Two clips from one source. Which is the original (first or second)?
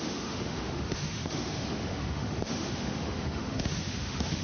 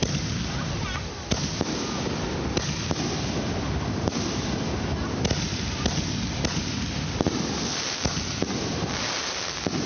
second